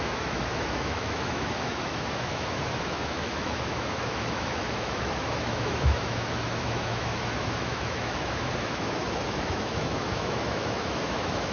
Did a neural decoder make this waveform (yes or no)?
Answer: yes